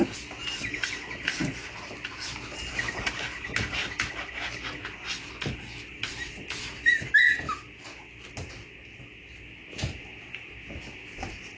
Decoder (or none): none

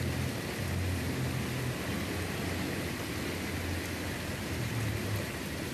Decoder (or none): none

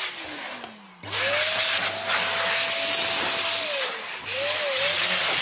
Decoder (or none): none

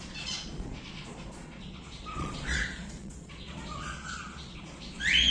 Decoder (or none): vocoder, Vocos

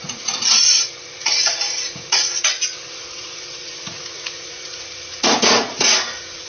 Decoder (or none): vocoder, Vocos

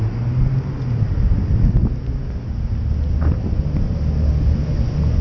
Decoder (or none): none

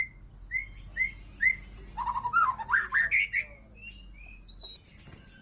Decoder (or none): none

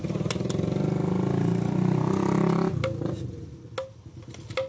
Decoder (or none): none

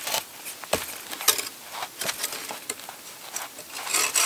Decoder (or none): none